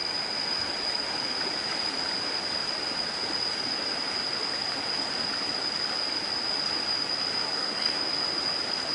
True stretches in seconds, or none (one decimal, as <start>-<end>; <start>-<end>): 0.0-7.4; 8.0-8.9